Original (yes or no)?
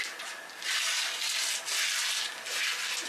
yes